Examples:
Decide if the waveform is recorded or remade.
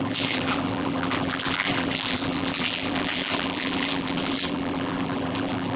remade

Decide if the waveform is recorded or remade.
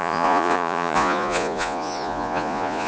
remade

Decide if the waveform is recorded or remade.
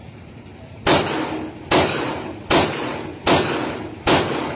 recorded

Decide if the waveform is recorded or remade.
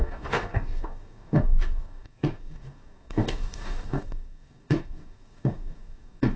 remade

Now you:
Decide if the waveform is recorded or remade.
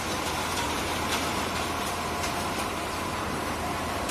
remade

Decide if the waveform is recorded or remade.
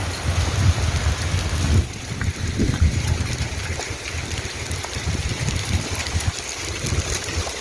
recorded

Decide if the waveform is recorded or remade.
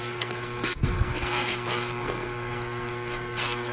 remade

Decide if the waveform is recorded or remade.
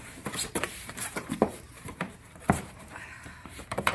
remade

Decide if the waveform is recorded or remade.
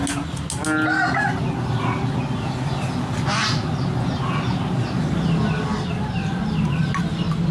recorded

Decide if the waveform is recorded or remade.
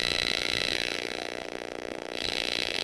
remade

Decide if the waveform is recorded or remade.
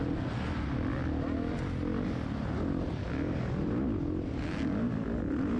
recorded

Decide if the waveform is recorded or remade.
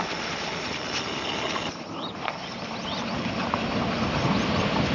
recorded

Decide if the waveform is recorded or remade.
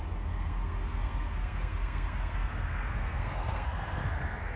remade